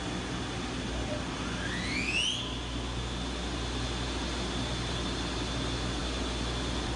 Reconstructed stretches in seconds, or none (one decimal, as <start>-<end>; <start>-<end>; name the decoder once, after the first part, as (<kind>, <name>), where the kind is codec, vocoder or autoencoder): none

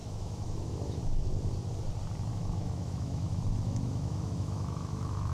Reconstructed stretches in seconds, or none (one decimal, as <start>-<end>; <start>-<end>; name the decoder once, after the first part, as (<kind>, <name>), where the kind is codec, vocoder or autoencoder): 0.0-1.0 (autoencoder, DAC-VAE); 2.3-5.3